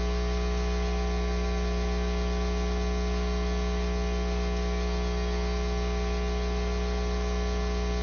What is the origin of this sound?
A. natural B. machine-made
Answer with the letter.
A